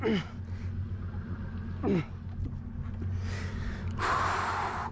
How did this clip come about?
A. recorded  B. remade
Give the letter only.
A